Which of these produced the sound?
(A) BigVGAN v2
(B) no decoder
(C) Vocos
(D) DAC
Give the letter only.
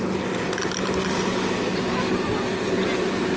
B